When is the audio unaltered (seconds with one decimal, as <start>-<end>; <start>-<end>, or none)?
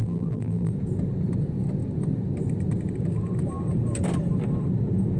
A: 0.7-5.2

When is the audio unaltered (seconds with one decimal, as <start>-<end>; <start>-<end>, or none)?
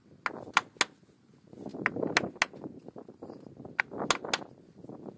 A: 0.0-5.2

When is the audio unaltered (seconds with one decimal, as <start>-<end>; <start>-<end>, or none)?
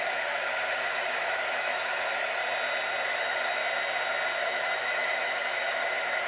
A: 2.4-3.1; 3.6-4.4